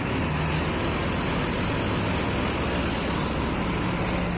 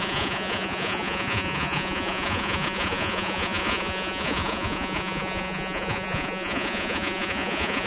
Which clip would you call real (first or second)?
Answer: first